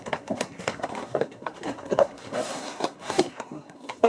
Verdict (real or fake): fake